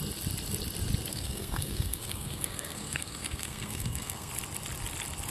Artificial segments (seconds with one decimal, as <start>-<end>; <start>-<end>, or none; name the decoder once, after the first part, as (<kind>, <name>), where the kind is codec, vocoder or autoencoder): 1.1-4.3 (codec, SNAC)